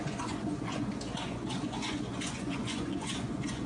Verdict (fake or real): fake